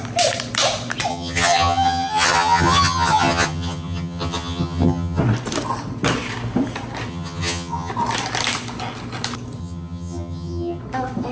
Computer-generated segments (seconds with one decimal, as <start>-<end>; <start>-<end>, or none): 1.1-5.2; 7.1-7.9; 9.6-10.8